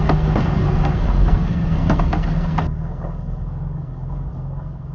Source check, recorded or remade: remade